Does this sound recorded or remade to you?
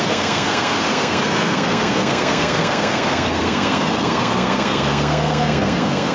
remade